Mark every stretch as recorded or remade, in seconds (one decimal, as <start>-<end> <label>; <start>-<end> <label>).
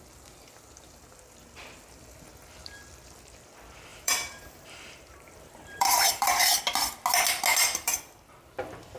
0.0-3.9 recorded; 3.9-6.6 remade; 6.6-7.5 recorded; 7.5-8.0 remade; 8.0-9.0 recorded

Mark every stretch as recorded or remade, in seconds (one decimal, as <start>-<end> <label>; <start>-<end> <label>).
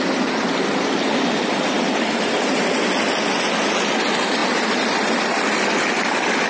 0.0-6.5 remade